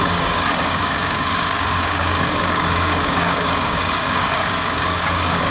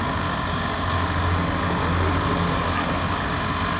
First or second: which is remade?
first